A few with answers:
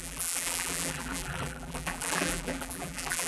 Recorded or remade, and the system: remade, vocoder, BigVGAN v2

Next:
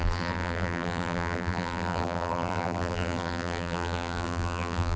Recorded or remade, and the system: remade, vocoder, BigVGAN v2